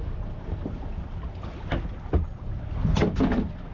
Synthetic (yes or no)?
no